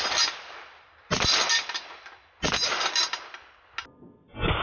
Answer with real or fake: real